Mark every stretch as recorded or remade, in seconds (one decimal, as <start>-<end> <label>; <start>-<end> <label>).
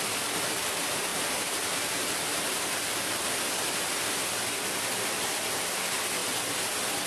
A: 0.0-7.1 recorded